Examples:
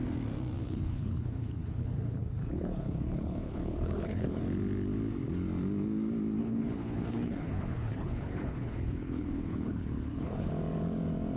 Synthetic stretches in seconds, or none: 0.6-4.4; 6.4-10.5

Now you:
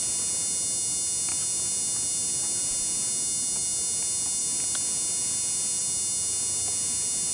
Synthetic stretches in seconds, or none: none

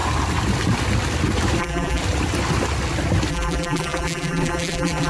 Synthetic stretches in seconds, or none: 1.6-2.0; 3.3-5.1

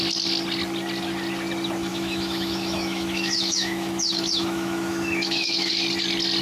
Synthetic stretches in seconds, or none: 1.9-5.7

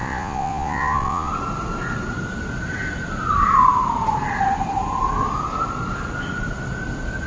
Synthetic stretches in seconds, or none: 0.0-1.3